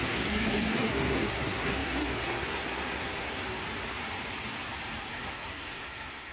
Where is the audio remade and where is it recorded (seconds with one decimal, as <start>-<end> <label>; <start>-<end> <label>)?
0.0-3.4 remade; 3.4-5.1 recorded; 5.1-6.3 remade